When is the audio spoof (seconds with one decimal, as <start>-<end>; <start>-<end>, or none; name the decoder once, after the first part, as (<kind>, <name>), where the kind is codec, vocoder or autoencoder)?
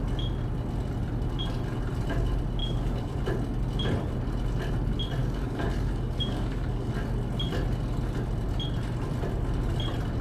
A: 2.6-3.2 (codec, DAC); 5.2-6.9